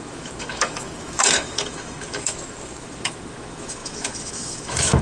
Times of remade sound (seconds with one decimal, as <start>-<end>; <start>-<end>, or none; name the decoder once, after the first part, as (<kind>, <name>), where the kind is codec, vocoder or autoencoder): 0.0-5.0 (autoencoder, DAC-VAE)